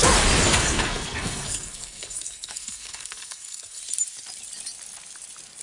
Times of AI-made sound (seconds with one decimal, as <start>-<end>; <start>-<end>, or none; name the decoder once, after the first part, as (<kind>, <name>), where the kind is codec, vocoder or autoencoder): 0.5-3.8 (codec, SNAC)